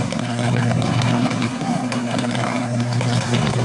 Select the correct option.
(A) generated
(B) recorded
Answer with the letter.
A